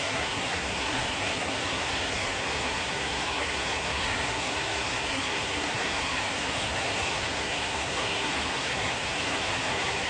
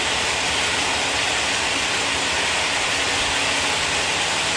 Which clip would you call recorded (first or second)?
second